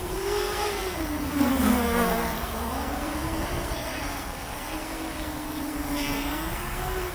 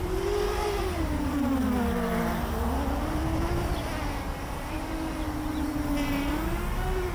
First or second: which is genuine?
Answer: second